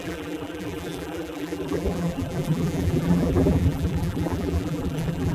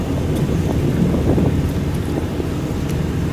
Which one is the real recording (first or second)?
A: second